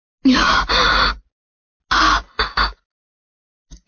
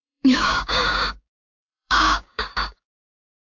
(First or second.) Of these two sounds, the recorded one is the first